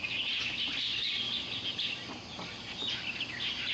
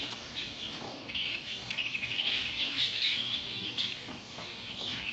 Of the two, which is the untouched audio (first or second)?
first